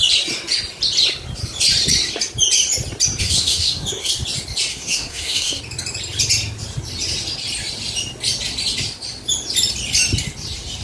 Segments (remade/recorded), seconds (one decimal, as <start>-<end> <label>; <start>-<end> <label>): 0.0-3.2 recorded; 3.2-4.1 remade; 4.1-4.7 recorded; 4.7-5.6 remade; 5.6-10.8 recorded